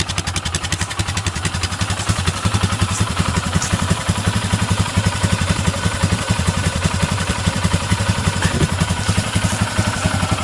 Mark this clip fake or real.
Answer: fake